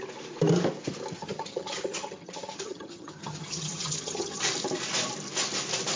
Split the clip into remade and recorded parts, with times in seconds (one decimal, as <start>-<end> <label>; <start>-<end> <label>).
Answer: 0.0-1.2 recorded; 1.2-4.4 remade; 4.4-6.0 recorded